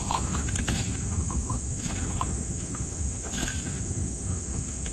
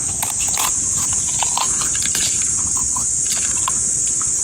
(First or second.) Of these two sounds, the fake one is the first